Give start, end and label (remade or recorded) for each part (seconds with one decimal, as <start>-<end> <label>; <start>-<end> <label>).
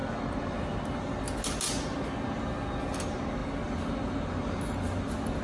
0.0-5.4 recorded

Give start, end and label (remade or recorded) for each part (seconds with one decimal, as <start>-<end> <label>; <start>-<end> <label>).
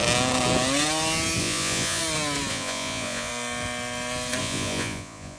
0.0-1.4 recorded; 1.4-2.0 remade; 2.0-2.5 recorded; 2.5-3.3 remade; 3.3-4.4 recorded; 4.4-5.4 remade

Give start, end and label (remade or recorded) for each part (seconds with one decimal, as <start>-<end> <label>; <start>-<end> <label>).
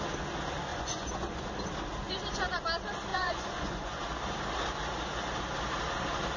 0.0-0.7 recorded; 0.7-1.4 remade; 1.4-3.1 recorded; 3.1-4.0 remade; 4.0-6.4 recorded